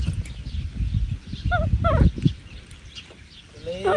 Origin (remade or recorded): recorded